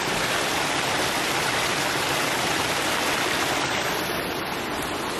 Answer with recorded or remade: recorded